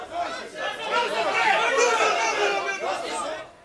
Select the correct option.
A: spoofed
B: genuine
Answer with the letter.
B